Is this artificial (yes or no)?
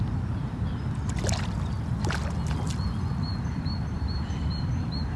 no